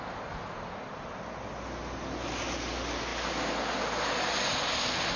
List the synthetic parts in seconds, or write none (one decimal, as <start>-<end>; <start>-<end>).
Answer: none